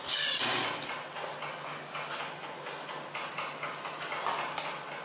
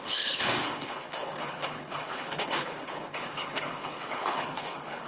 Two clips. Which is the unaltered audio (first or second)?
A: first